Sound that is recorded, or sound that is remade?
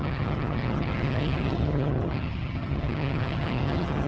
remade